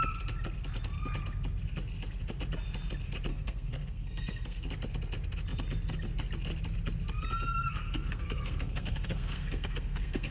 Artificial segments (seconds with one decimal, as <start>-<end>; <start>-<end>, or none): 3.3-4.7; 7.6-10.3